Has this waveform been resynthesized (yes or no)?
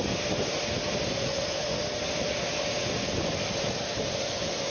no